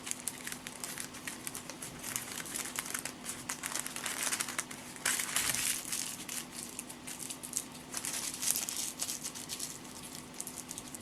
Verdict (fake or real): real